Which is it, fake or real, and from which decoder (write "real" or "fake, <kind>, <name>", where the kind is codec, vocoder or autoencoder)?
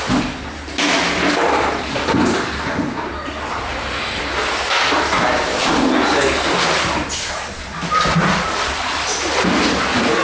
real